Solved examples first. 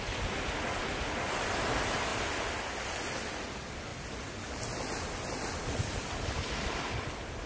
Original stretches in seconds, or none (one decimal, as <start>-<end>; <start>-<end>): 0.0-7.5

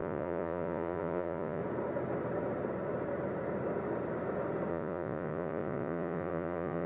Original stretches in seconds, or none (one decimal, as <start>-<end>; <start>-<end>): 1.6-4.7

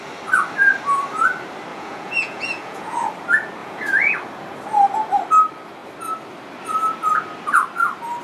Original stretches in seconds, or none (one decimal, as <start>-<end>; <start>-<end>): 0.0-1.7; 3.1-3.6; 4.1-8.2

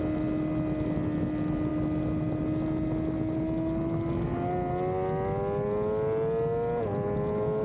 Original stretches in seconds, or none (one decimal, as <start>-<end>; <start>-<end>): 0.0-7.6